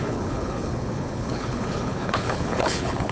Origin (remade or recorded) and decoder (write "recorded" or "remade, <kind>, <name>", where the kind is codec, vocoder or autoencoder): remade, codec, HILCodec